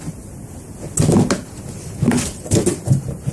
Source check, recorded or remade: recorded